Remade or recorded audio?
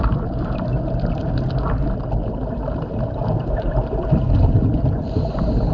remade